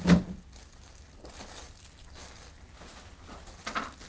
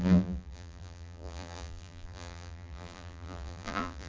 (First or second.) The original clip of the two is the first